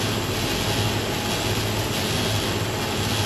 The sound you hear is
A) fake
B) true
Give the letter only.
B